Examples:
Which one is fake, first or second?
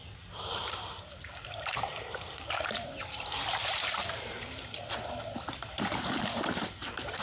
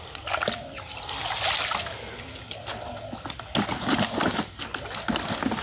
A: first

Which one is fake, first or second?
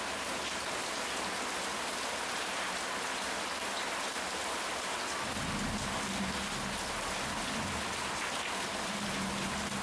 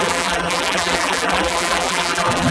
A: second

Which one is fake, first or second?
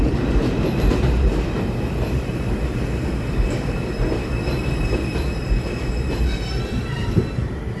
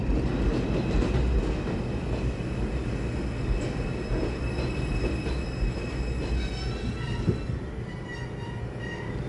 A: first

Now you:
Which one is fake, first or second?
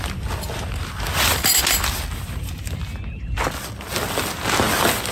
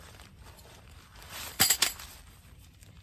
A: second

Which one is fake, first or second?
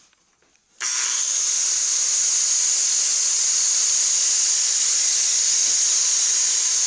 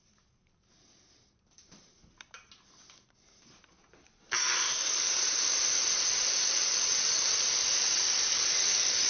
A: second